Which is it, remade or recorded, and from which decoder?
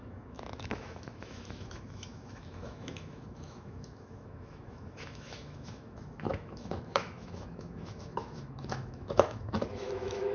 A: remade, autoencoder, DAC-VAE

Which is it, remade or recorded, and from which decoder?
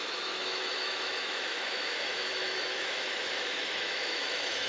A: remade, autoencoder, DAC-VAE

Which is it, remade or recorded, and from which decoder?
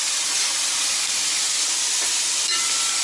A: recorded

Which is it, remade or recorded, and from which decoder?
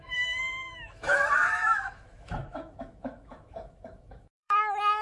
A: remade, autoencoder, DAC-VAE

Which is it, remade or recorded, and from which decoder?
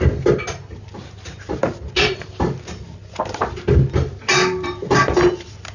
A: recorded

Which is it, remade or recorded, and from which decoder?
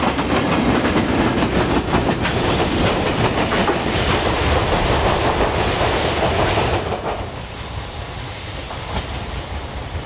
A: recorded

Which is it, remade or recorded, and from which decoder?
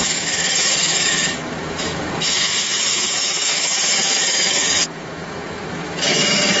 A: remade, autoencoder, DAC-VAE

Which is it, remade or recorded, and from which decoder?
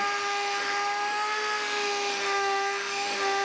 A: remade, autoencoder, DAC-VAE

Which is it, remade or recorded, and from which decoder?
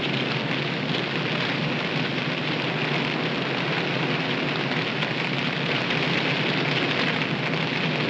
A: recorded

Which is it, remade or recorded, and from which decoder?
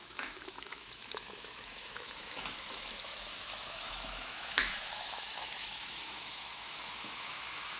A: remade, autoencoder, DAC-VAE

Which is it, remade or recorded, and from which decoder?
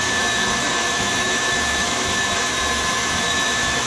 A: remade, autoencoder, DAC-VAE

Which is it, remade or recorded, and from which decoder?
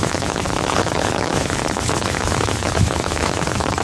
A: remade, autoencoder, DAC-VAE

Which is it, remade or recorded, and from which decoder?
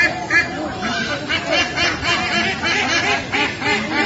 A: recorded